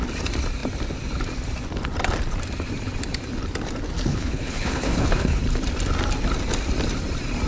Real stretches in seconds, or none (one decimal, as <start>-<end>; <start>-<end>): 0.0-4.1; 5.4-7.5